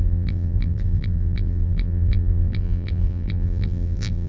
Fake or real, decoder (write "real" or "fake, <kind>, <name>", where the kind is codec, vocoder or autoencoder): fake, vocoder, BigVGAN v2